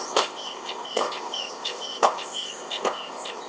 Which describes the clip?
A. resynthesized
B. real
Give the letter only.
A